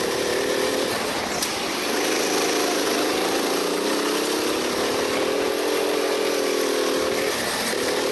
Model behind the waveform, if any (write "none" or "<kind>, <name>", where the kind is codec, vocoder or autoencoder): none